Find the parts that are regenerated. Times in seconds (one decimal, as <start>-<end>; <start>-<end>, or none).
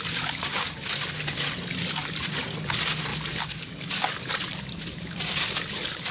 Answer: none